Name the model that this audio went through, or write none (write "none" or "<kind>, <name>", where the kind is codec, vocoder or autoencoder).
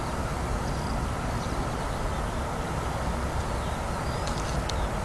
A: none